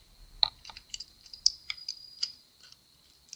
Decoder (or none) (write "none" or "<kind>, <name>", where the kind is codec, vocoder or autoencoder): vocoder, BigVGAN v2